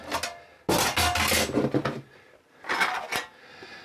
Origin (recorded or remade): recorded